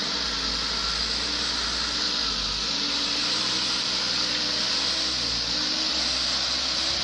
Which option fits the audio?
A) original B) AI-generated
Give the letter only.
A